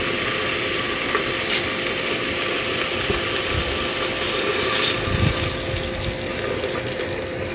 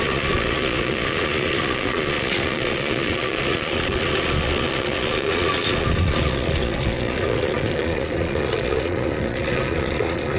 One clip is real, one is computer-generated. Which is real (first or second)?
first